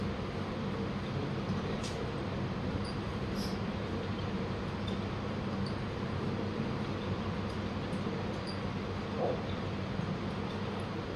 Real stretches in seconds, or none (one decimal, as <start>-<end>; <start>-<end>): 0.0-2.9; 4.1-11.2

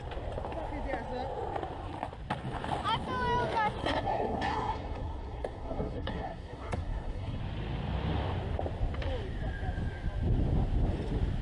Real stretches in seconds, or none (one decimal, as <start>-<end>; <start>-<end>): 0.0-3.8; 7.4-11.4

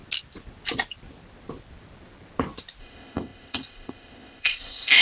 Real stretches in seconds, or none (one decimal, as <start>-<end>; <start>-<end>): 0.0-2.8